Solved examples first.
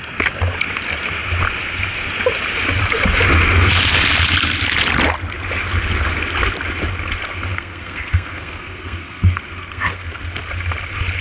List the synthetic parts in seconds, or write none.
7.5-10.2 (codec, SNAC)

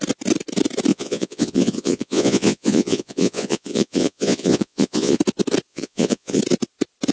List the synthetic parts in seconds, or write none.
0.9-5.2 (vocoder, Vocos); 5.7-6.4

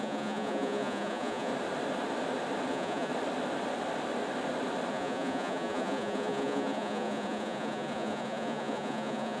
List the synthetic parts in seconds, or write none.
0.0-1.5 (vocoder, Vocos); 2.7-3.1; 4.9-9.4